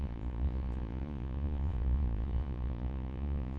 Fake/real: fake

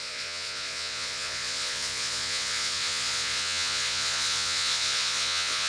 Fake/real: fake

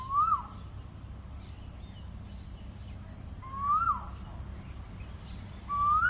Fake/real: real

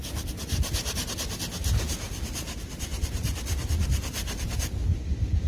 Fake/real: real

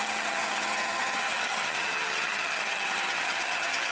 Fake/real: fake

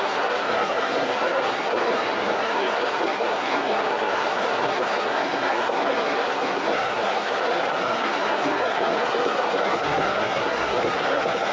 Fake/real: fake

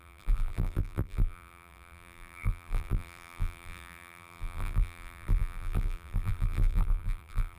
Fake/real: fake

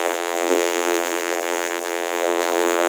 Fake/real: fake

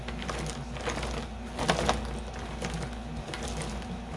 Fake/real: real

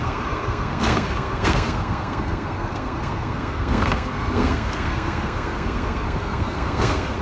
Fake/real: fake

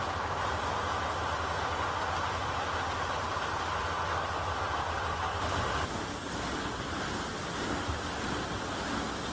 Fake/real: real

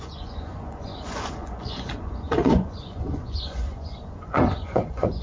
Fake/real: fake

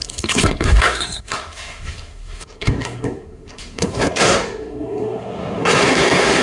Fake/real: fake